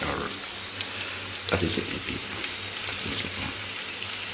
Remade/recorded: recorded